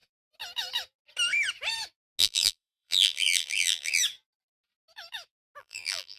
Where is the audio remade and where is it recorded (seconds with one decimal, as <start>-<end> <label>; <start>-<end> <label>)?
0.0-2.2 recorded; 2.2-4.0 remade; 4.0-5.6 recorded; 5.6-6.2 remade